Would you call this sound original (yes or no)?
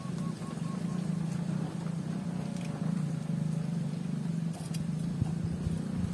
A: yes